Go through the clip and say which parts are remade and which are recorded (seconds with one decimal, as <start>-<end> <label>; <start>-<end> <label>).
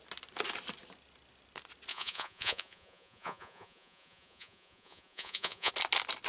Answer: 0.0-1.9 recorded; 1.9-5.7 remade; 5.7-6.3 recorded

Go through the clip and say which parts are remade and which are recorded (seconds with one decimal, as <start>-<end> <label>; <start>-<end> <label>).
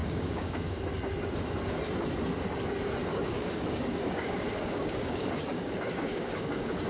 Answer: 0.0-0.8 remade; 0.8-3.1 recorded; 3.1-6.9 remade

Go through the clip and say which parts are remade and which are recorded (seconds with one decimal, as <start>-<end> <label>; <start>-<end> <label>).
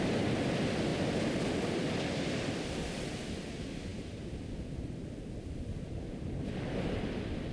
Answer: 0.0-7.5 recorded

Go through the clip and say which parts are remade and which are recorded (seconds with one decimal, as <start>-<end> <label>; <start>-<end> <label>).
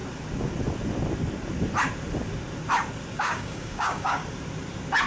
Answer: 0.0-3.1 recorded; 3.1-4.2 remade; 4.2-5.1 recorded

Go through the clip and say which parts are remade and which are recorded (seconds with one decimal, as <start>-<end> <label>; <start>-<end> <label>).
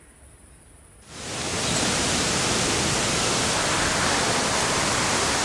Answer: 0.0-5.4 recorded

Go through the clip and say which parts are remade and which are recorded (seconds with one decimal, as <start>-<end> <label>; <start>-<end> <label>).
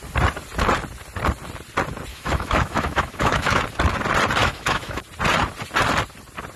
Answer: 0.0-2.1 recorded; 2.1-3.6 remade; 3.6-4.4 recorded; 4.4-5.0 remade; 5.0-6.6 recorded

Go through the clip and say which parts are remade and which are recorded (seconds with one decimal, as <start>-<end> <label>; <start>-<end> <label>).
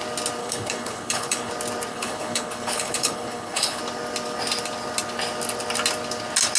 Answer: 0.0-0.4 recorded; 0.4-1.5 remade; 1.5-1.9 recorded; 1.9-3.8 remade; 3.8-6.6 recorded